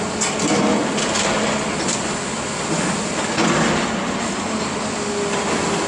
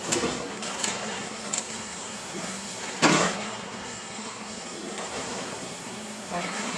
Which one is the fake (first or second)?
second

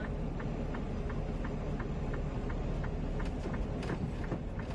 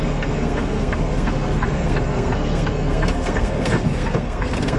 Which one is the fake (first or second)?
second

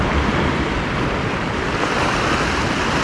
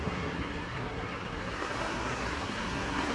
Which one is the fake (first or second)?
second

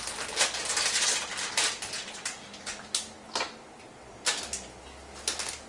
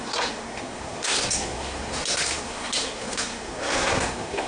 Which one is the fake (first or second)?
second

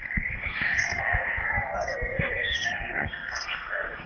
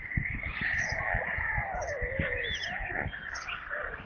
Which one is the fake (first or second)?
first